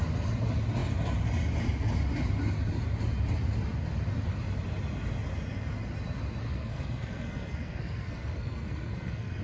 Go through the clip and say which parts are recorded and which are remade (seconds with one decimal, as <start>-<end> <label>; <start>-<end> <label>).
0.0-6.5 recorded; 6.5-9.4 remade